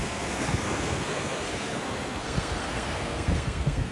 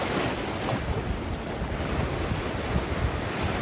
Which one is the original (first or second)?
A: second